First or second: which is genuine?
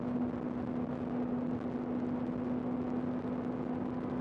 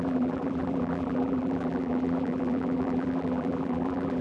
first